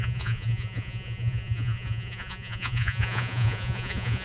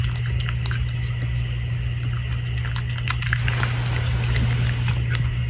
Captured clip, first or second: second